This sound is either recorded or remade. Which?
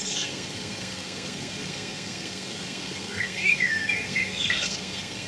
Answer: remade